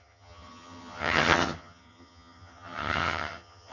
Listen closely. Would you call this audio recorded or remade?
remade